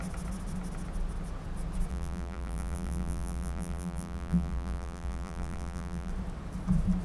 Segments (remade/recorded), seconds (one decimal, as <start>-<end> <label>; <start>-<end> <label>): 0.0-1.9 recorded; 1.9-6.1 remade; 6.1-7.0 recorded